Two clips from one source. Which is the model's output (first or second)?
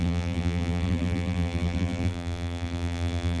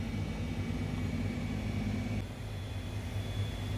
first